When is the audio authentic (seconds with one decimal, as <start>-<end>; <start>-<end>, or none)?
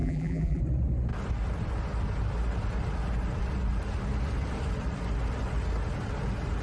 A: 0.6-6.6